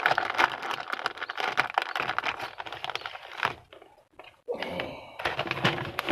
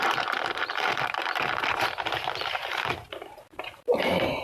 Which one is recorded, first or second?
first